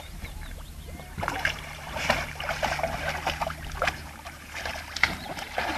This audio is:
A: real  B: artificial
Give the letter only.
B